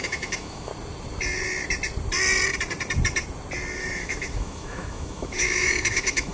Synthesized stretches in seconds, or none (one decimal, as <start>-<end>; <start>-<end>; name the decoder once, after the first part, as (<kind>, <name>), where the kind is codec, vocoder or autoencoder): 0.0-0.7 (autoencoder, DAC-VAE); 3.8-6.3